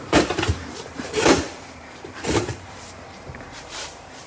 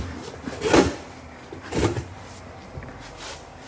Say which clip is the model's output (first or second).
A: first